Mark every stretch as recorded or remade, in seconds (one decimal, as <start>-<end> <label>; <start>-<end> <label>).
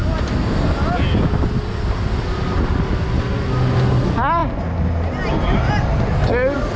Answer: 0.0-6.8 recorded